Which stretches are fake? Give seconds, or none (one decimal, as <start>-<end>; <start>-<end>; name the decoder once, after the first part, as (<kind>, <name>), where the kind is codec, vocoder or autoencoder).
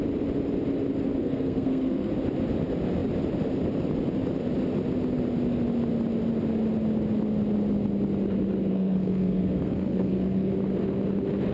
1.2-2.1 (codec, SNAC); 8.7-10.5